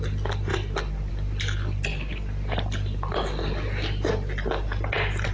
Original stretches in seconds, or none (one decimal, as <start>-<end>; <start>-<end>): 0.0-5.3